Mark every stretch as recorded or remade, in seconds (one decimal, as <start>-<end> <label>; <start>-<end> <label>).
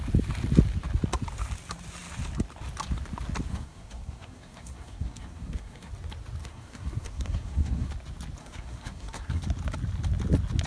0.0-3.5 recorded; 3.5-5.9 remade; 5.9-6.4 recorded; 6.4-7.9 remade; 7.9-8.4 recorded; 8.4-9.4 remade; 9.4-10.7 recorded